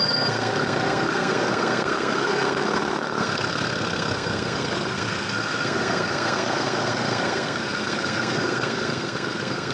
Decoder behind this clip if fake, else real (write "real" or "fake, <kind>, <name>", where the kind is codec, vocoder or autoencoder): fake, codec, SNAC